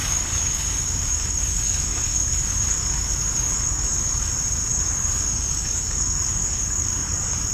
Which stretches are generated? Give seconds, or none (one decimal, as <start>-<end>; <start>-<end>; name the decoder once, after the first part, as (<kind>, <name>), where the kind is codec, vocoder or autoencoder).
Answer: 0.0-4.3 (codec, DAC); 4.7-7.5